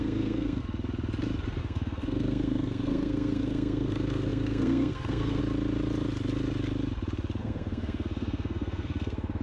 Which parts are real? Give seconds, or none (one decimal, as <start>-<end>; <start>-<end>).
0.6-1.6; 5.4-7.4